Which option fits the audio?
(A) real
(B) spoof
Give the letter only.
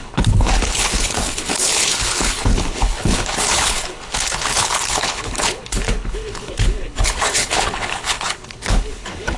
B